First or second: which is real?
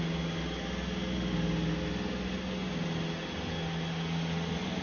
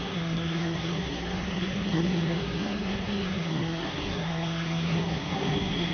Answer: first